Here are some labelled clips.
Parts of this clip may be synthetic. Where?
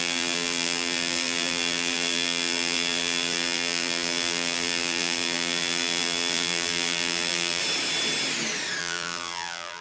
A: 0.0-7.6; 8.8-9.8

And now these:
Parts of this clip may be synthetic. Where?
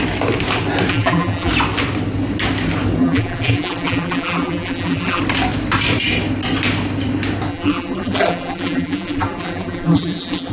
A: 0.9-1.5; 3.0-5.2; 7.5-10.5